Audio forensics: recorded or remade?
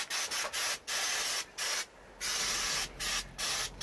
recorded